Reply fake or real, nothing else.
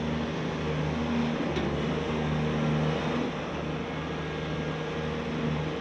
real